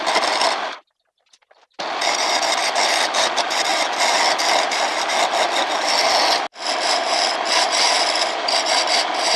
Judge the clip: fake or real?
real